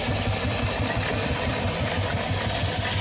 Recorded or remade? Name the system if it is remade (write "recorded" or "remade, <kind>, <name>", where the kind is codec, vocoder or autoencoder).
remade, vocoder, BigVGAN v2